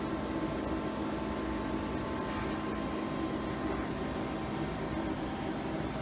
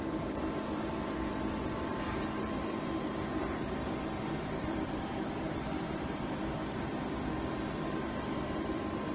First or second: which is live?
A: first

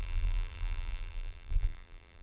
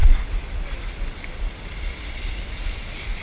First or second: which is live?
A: second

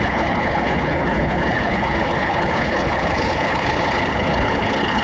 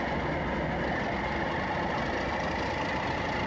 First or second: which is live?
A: second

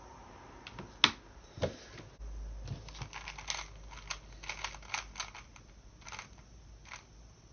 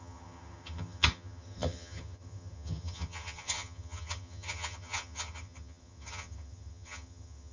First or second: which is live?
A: first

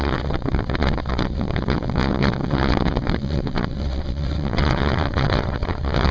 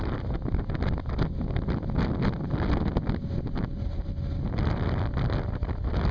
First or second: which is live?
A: second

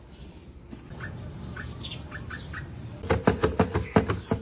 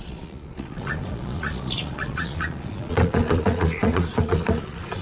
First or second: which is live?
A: first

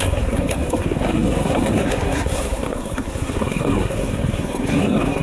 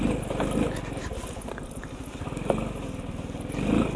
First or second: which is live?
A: second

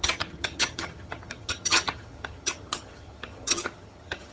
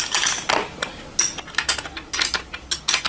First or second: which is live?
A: second